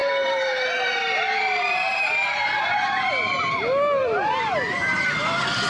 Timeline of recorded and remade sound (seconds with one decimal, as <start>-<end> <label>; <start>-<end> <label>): 0.0-3.4 remade; 3.4-4.0 recorded; 4.0-5.1 remade; 5.1-5.7 recorded